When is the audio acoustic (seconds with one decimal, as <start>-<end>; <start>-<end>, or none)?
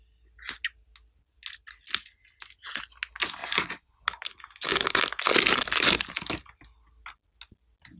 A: 0.0-3.4; 4.0-8.0